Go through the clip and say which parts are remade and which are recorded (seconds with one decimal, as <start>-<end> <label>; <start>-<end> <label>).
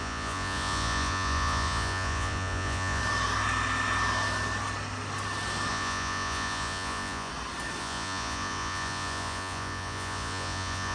0.0-3.0 remade; 3.0-5.7 recorded; 5.7-7.3 remade; 7.3-7.8 recorded; 7.8-10.9 remade